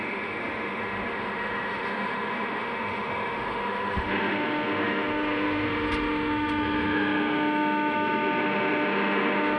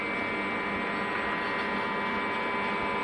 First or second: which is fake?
first